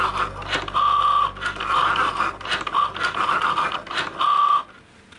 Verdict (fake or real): real